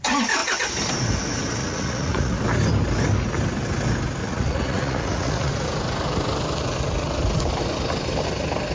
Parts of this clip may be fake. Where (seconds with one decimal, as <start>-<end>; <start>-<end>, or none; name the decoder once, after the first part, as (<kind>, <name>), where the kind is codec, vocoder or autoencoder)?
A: 1.6-2.4 (vocoder, Vocos); 4.2-5.5